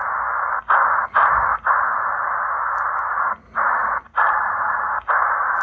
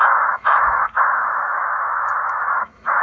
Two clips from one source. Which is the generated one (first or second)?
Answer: second